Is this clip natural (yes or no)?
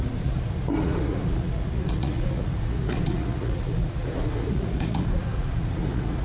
no